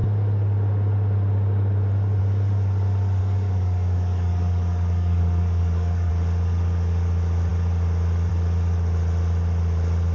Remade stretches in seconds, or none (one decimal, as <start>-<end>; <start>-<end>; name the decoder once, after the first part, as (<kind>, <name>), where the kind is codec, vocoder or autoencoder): 3.2-6.1 (codec, DAC)